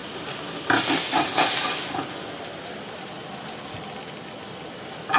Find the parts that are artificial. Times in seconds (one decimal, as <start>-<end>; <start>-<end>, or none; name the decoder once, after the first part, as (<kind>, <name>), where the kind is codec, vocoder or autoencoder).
none

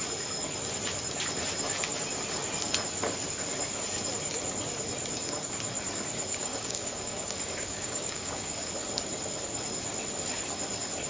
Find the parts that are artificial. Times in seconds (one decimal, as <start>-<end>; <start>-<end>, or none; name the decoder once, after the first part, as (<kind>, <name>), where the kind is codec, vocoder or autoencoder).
6.3-8.7 (codec, DAC)

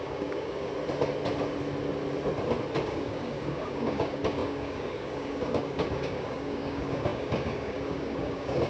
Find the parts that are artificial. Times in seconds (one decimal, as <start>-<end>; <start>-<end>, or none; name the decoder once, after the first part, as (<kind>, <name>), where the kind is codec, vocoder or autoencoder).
0.0-0.7 (codec, DAC); 2.8-8.7

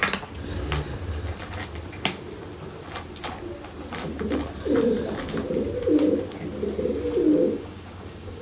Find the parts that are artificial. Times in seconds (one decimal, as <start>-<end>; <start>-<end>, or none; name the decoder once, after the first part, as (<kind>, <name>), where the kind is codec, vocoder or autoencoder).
7.4-8.4 (codec, DAC)

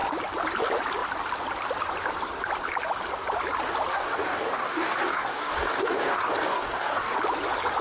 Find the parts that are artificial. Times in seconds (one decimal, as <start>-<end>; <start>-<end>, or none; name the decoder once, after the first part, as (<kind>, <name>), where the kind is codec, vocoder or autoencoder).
3.9-7.2 (codec, DAC)

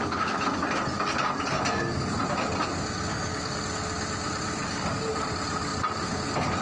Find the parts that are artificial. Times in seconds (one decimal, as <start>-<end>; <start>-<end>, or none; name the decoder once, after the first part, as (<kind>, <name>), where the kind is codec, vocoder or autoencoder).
3.1-3.6 (codec, DAC); 4.6-5.1